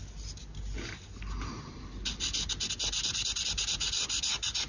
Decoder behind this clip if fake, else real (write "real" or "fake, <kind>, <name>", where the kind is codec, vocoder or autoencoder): real